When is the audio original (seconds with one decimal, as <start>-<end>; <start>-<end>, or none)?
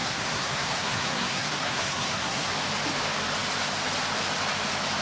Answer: 2.5-5.0